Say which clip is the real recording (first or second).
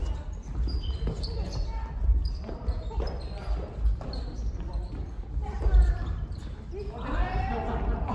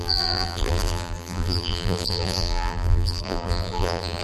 first